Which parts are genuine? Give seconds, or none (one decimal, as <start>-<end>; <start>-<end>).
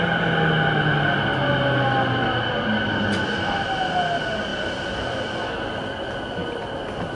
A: 0.0-7.1